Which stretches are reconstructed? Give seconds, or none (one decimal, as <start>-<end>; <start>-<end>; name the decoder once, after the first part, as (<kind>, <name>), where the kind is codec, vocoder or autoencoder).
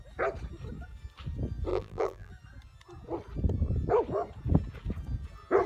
1.7-2.3 (vocoder, BigVGAN v2)